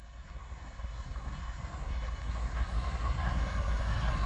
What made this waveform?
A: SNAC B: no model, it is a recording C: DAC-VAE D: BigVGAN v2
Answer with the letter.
A